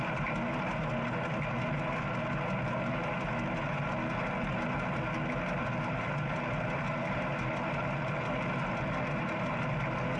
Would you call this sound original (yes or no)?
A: yes